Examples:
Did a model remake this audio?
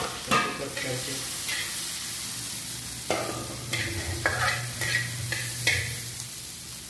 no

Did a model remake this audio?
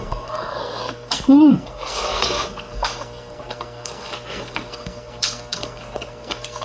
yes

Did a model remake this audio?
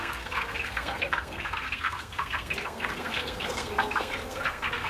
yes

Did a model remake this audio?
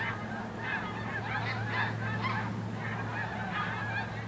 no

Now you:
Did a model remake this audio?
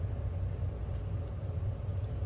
no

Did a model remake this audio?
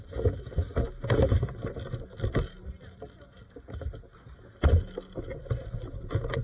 no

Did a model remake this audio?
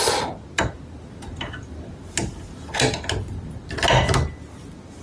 no